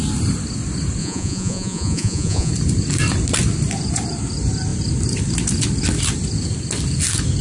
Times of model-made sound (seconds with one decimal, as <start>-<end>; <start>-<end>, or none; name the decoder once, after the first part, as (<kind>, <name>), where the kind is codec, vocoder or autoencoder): 1.0-2.5 (vocoder, Vocos)